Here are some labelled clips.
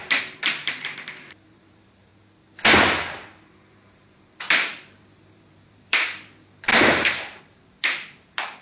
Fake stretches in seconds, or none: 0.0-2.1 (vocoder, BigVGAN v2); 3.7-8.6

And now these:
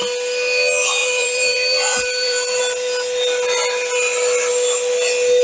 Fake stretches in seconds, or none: 1.0-2.6 (vocoder, BigVGAN v2)

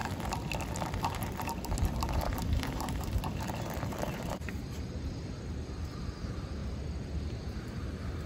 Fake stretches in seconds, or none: 1.0-6.6 (vocoder, BigVGAN v2); 7.5-8.3

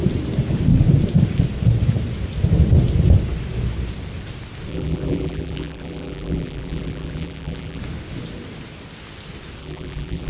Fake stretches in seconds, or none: 4.7-7.8 (vocoder, BigVGAN v2); 9.6-10.3

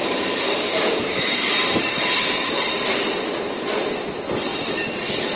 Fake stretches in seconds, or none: 0.0-2.5 (vocoder, BigVGAN v2); 4.5-5.4

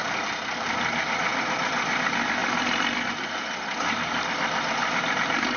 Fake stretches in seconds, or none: 0.0-1.1 (vocoder, BigVGAN v2)